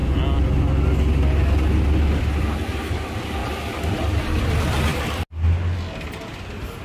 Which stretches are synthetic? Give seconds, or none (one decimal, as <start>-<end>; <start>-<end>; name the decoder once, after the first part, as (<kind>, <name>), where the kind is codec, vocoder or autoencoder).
none